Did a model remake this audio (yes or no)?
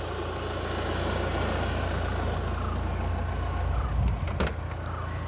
no